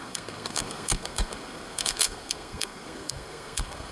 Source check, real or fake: fake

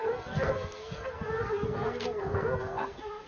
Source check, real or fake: fake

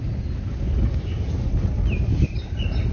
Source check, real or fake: real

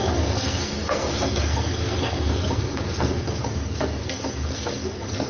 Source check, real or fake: fake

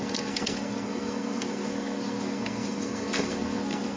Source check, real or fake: fake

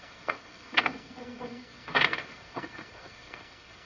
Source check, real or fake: fake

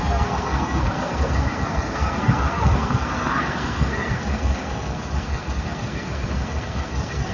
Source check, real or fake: fake